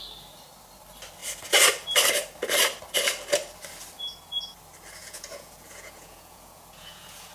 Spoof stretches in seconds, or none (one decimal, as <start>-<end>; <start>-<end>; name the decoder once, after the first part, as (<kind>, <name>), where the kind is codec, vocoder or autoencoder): 5.0-7.3 (vocoder, Vocos)